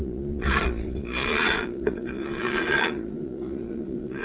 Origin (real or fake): fake